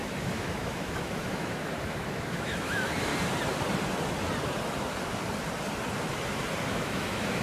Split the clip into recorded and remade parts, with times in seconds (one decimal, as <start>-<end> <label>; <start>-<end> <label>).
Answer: 0.0-3.1 remade; 3.1-6.7 recorded; 6.7-7.4 remade